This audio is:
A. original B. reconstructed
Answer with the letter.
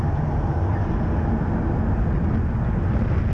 A